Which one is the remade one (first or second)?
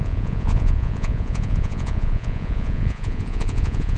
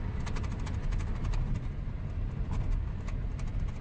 first